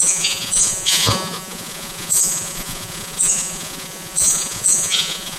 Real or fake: fake